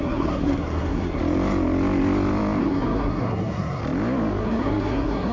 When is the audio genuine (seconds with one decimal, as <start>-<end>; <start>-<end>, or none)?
1.2-2.6; 3.8-4.4